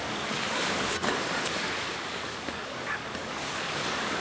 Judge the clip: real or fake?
fake